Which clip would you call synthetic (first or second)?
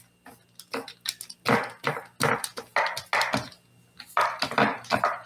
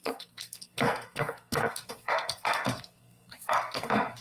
second